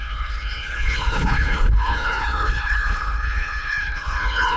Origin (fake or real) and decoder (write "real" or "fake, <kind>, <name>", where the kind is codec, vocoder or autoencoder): fake, codec, HILCodec